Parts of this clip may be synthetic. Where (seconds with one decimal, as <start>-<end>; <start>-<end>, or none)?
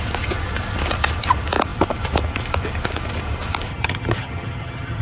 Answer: 3.7-5.0